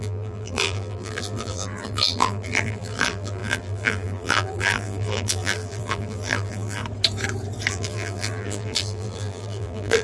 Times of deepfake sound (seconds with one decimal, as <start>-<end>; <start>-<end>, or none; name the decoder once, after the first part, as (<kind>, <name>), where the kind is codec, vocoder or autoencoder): 0.0-6.8 (vocoder, BigVGAN v2); 7.7-10.0